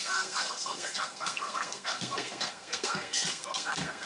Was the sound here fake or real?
fake